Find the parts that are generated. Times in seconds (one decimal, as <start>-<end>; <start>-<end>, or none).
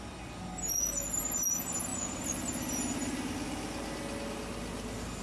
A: none